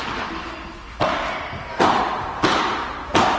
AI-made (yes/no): no